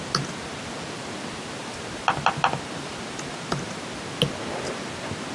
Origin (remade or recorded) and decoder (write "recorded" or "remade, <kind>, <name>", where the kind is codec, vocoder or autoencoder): recorded